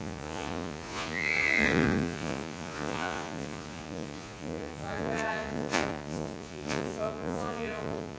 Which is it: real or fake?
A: fake